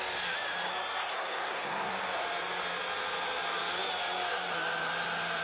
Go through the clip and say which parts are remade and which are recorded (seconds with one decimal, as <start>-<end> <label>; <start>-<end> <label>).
0.0-1.0 recorded; 1.0-1.9 remade; 1.9-5.4 recorded